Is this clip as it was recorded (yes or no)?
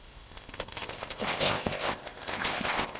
no